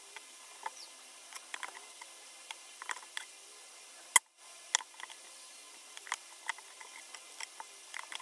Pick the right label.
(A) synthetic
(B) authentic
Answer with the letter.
B